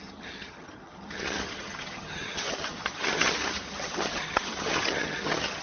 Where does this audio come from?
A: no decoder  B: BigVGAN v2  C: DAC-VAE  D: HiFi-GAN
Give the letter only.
D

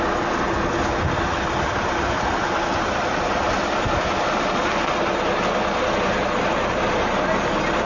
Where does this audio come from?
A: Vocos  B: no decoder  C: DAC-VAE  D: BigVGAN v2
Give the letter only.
B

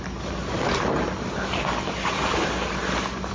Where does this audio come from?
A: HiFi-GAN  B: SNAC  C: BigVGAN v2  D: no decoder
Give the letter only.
D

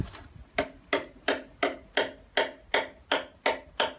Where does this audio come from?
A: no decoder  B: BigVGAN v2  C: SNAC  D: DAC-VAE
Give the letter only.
A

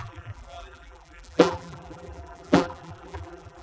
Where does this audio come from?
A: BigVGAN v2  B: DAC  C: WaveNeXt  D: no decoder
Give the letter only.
A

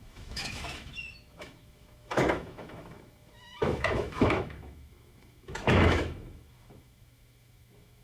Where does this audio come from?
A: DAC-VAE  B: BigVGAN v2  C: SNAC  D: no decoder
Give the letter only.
A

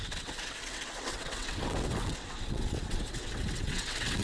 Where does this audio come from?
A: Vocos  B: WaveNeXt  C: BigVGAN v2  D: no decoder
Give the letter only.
B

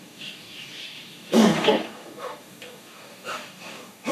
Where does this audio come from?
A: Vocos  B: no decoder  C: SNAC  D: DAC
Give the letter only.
D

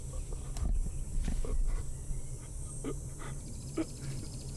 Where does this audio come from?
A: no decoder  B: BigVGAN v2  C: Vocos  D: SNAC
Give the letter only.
B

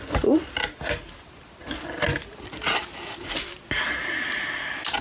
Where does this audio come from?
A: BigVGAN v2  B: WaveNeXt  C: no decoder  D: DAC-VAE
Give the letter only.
C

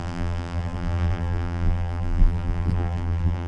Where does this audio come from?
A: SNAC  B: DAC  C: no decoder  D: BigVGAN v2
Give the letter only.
D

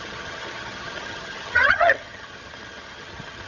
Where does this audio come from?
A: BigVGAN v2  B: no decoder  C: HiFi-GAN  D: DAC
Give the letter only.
C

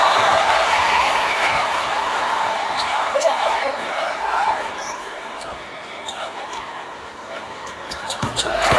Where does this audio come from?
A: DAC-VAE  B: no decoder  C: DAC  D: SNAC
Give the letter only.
D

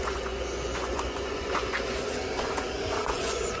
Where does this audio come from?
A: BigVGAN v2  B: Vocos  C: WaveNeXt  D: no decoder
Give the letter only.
B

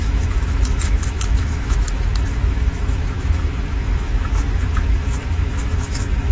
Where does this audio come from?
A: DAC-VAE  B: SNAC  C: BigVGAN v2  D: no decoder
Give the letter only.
A